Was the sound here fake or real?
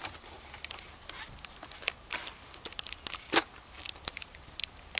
real